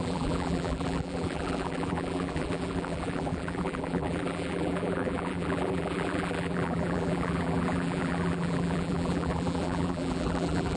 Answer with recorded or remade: remade